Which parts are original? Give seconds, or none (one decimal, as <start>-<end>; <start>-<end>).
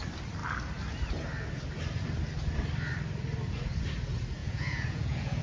0.0-4.4